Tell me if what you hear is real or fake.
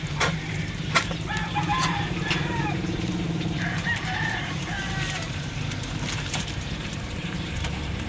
fake